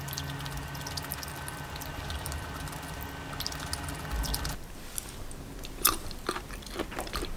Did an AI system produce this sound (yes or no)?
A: no